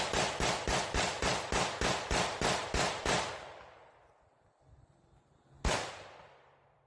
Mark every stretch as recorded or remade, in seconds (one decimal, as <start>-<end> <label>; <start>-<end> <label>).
0.0-1.3 remade; 1.3-1.9 recorded; 1.9-2.6 remade; 2.6-6.2 recorded; 6.2-6.9 remade